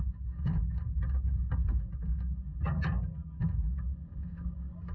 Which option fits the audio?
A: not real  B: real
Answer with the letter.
B